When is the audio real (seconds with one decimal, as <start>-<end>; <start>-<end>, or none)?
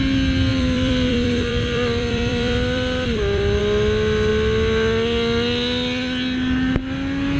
0.0-0.5; 3.6-7.4